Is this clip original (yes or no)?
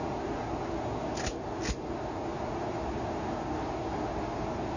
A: yes